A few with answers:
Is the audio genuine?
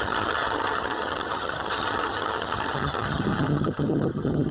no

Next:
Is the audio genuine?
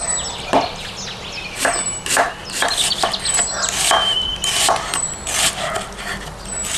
yes